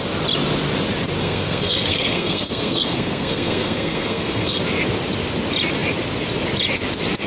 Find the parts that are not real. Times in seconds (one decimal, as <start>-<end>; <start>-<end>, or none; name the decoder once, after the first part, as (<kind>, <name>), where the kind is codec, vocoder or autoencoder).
1.2-4.6 (codec, SNAC)